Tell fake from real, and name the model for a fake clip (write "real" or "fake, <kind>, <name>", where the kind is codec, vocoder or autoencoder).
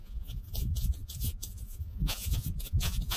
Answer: fake, vocoder, Vocos